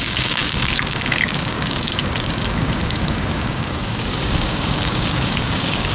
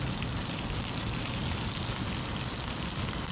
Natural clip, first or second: second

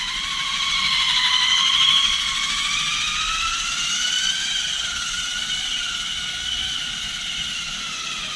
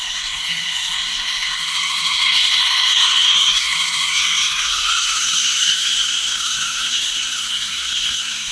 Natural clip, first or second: first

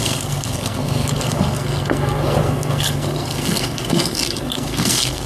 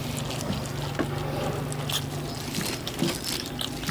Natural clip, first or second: second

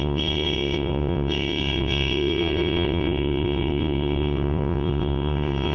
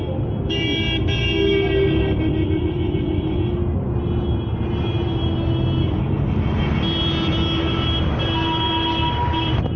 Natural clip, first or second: second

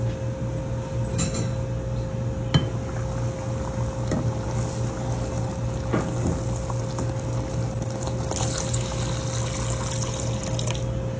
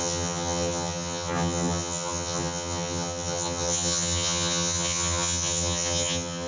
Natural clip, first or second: first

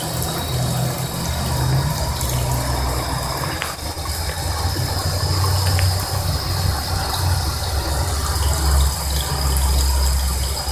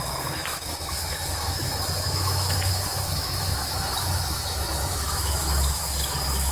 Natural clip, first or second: first